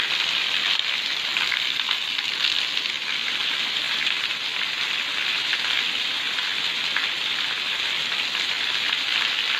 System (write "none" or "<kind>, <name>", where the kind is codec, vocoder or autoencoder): none